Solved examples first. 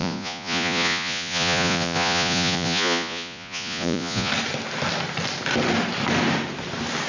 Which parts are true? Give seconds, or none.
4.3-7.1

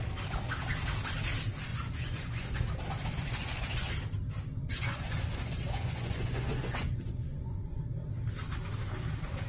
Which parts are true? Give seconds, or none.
0.0-1.7; 2.7-3.2; 3.9-4.6; 7.8-9.5

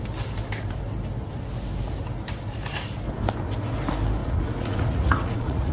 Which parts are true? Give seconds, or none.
0.0-4.2